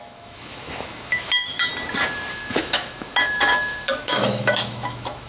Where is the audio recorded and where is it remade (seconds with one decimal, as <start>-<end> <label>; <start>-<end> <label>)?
0.0-1.7 remade; 1.7-2.3 recorded; 2.3-5.3 remade